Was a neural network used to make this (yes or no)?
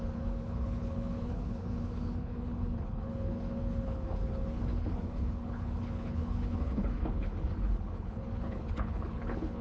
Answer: yes